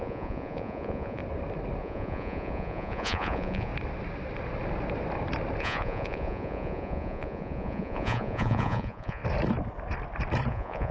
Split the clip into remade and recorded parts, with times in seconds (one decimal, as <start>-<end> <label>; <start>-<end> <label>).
0.0-1.2 remade; 1.2-1.8 recorded; 1.8-3.7 remade; 3.7-5.6 recorded; 5.6-9.2 remade; 9.2-10.5 recorded; 10.5-10.9 remade